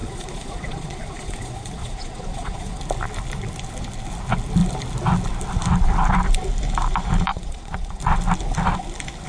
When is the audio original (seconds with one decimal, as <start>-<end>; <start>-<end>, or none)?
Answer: 2.8-7.3; 8.0-9.3